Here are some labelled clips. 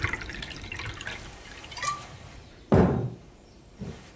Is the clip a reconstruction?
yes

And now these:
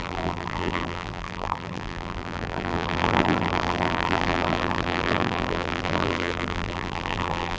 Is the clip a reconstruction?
yes